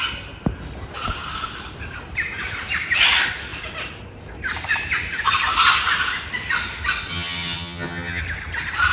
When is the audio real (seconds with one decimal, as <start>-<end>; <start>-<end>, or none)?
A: 0.0-7.1; 8.2-8.9